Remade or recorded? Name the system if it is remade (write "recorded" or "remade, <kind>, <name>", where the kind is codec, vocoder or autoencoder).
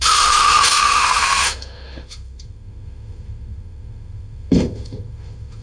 remade, autoencoder, DAC-VAE